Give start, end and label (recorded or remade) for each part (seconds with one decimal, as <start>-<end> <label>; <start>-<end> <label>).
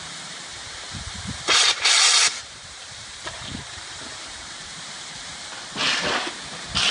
0.0-5.5 remade; 5.5-6.9 recorded